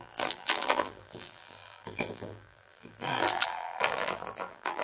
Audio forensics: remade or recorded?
remade